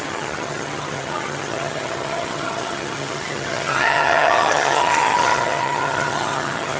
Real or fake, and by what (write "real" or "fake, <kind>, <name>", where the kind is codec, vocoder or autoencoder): fake, vocoder, HiFi-GAN